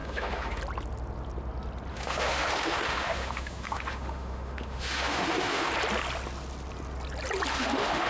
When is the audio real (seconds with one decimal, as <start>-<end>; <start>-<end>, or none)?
0.6-1.9; 5.7-7.5